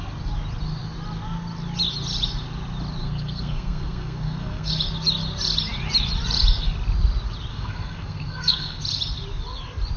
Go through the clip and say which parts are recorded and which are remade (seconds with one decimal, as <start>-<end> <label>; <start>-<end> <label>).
0.0-3.0 recorded; 3.0-4.7 remade; 4.7-7.5 recorded; 7.5-8.8 remade; 8.8-10.0 recorded